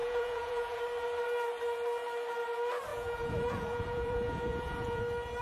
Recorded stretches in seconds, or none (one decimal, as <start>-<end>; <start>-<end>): 0.8-2.9; 5.0-5.4